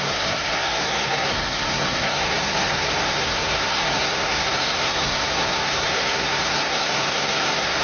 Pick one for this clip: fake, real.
fake